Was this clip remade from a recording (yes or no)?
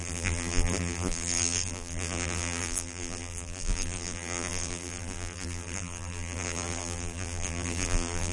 yes